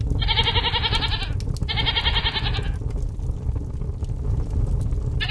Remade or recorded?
recorded